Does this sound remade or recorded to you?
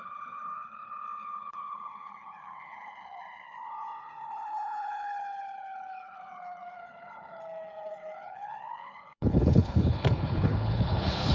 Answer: remade